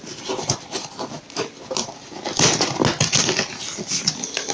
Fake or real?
real